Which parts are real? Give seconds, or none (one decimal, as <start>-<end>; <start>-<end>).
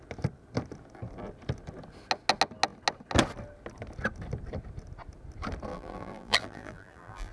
0.0-5.7